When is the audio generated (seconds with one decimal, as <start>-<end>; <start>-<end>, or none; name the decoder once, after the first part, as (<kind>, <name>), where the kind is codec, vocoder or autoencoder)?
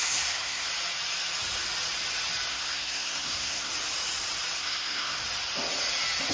0.0-0.7 (codec, SNAC); 2.5-3.7; 4.6-5.2